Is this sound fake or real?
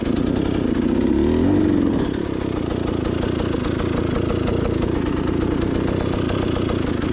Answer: real